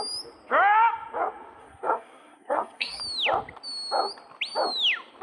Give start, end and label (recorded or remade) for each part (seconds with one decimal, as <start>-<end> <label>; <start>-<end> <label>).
0.0-1.6 recorded; 1.6-3.0 remade; 3.0-5.2 recorded